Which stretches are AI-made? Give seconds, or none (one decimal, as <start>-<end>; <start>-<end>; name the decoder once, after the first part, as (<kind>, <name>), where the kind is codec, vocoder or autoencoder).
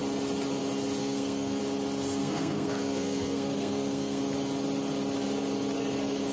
1.0-1.6 (codec, SNAC); 2.2-4.2